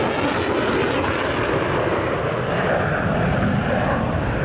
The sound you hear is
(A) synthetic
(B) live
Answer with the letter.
B